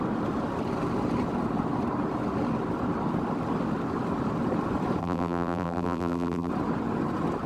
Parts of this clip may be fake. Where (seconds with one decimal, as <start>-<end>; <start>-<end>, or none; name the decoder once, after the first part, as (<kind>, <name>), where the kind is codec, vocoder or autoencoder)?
5.0-6.5 (vocoder, BigVGAN v2)